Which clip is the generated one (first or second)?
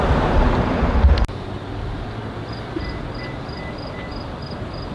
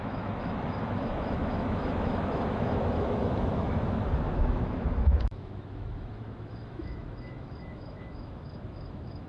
second